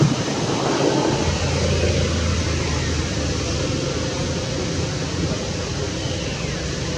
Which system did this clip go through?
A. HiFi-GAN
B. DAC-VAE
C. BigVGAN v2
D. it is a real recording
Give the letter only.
D